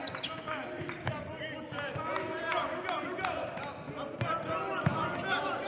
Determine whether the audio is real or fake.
real